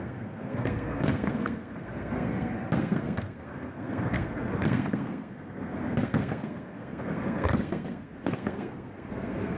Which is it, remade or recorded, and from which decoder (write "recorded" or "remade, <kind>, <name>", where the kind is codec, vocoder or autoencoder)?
remade, codec, SNAC